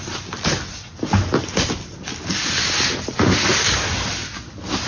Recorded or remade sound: recorded